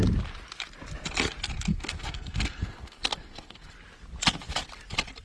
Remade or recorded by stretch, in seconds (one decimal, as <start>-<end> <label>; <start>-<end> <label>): 0.0-1.7 recorded; 1.7-3.7 remade; 3.7-5.2 recorded